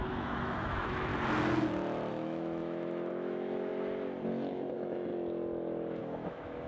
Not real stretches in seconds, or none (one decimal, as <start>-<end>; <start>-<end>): 0.0-1.1; 2.1-3.7; 4.5-5.1; 6.0-6.7